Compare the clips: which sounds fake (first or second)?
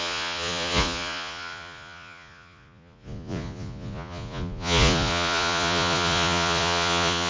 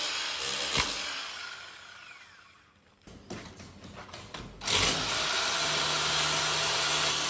first